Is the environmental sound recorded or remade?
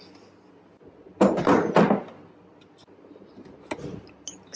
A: recorded